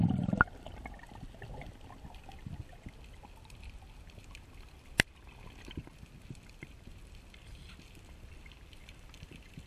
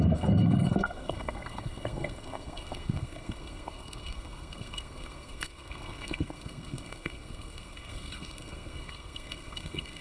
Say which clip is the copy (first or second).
second